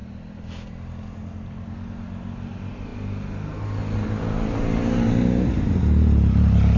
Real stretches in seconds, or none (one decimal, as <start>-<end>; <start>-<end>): 0.0-6.8